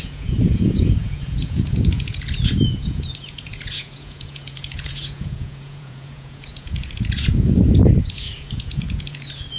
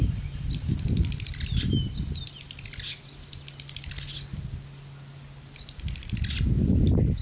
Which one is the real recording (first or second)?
second